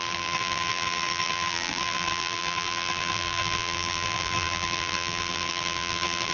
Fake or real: fake